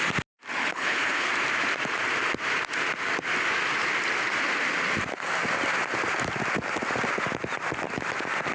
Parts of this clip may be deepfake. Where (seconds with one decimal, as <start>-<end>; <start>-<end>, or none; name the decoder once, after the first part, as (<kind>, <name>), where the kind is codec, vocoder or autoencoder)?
0.6-1.3 (codec, HILCodec)